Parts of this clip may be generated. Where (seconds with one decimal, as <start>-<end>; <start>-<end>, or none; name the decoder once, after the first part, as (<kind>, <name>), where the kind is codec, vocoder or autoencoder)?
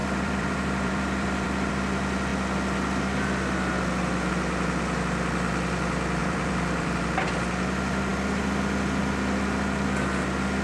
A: 0.0-1.7 (vocoder, BigVGAN v2); 6.2-7.0